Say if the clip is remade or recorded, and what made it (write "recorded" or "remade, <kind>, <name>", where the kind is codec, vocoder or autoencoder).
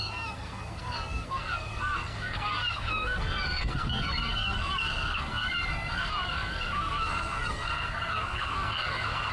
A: remade, codec, SNAC